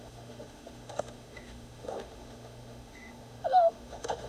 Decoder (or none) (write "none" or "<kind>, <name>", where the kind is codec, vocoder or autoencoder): autoencoder, DAC-VAE